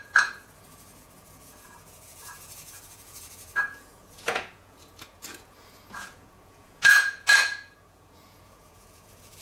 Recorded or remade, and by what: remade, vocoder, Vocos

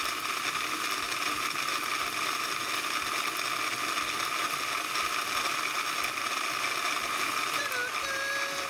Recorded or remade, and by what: recorded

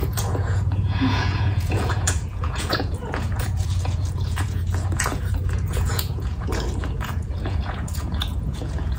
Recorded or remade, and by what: remade, vocoder, Vocos